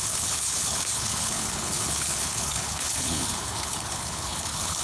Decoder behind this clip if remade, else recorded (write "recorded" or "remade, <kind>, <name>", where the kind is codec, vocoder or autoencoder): remade, codec, HILCodec